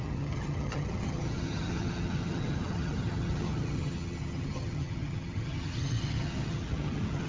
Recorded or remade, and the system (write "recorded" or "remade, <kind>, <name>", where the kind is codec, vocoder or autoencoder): remade, vocoder, HiFi-GAN